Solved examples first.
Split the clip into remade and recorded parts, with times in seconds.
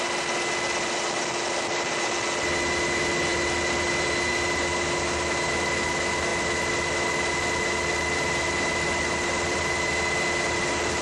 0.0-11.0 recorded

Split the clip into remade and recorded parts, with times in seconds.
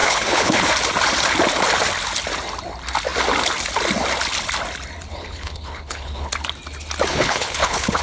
0.0-0.7 remade; 0.7-5.1 recorded; 5.1-6.3 remade; 6.3-7.1 recorded; 7.1-8.0 remade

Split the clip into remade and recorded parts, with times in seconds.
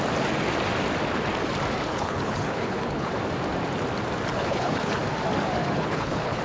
0.0-1.9 recorded; 1.9-3.1 remade; 3.1-4.3 recorded; 4.3-5.0 remade; 5.0-5.6 recorded; 5.6-6.4 remade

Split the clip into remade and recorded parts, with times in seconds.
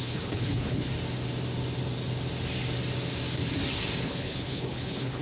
0.0-0.9 remade; 0.9-4.0 recorded; 4.0-5.2 remade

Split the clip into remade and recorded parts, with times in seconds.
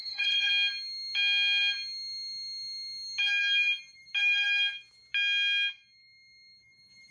0.0-0.5 remade; 0.5-7.1 recorded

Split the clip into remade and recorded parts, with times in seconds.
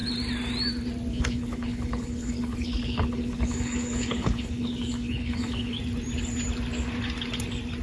0.0-1.1 recorded; 1.1-5.8 remade; 5.8-7.8 recorded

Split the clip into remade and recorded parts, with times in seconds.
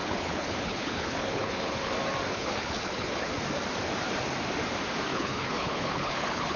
0.0-1.9 remade; 1.9-2.3 recorded; 2.3-3.2 remade; 3.2-5.1 recorded; 5.1-6.6 remade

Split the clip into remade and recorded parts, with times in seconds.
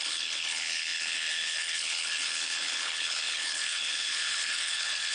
0.0-5.1 remade